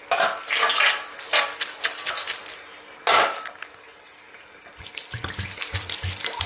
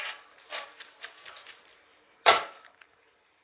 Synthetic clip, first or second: second